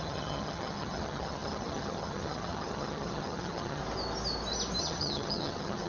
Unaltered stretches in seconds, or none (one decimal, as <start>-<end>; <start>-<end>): 3.8-4.8